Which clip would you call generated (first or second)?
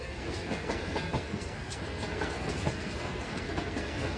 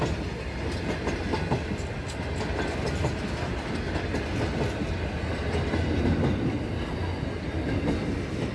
first